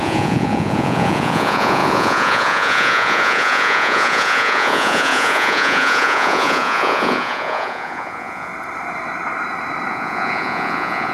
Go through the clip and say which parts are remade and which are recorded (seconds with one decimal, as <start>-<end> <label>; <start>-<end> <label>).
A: 0.0-8.5 remade; 8.5-9.9 recorded; 9.9-11.1 remade